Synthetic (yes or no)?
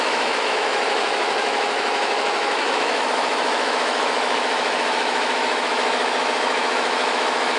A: yes